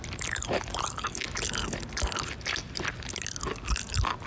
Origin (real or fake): real